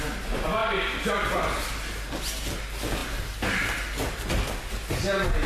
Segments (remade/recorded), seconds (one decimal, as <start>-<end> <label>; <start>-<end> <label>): 0.0-5.5 recorded